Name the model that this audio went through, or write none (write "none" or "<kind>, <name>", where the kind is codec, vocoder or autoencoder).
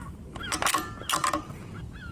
none